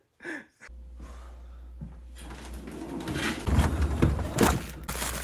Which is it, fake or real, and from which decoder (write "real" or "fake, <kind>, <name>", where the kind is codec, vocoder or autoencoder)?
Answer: real